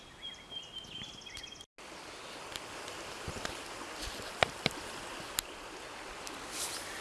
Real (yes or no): yes